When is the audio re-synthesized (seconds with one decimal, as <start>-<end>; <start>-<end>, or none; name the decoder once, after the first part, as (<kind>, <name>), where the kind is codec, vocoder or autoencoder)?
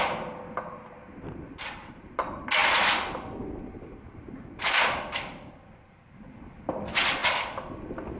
none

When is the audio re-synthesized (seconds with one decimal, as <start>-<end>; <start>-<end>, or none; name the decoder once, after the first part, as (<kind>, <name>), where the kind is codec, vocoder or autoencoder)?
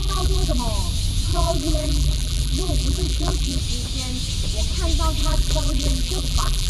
0.0-0.6 (vocoder, BigVGAN v2); 1.3-3.6; 5.2-6.7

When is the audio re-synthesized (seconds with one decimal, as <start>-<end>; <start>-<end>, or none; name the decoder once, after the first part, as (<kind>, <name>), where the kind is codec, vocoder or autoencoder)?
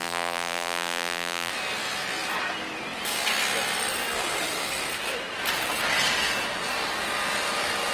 0.0-1.5 (vocoder, BigVGAN v2)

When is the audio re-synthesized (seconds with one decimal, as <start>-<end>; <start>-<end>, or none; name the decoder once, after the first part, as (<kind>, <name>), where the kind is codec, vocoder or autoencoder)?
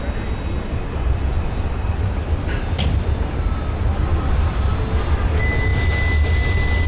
none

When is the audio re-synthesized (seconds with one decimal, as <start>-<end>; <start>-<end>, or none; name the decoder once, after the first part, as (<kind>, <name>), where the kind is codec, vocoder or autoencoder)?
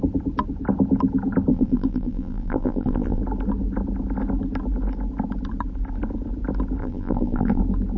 1.5-3.2 (vocoder, BigVGAN v2); 6.8-7.6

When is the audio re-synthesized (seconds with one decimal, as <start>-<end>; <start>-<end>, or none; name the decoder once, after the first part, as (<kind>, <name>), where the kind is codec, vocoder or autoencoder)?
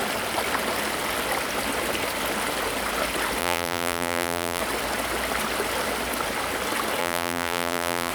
3.4-4.6 (vocoder, BigVGAN v2); 7.0-8.1